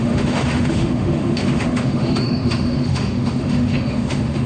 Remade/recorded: remade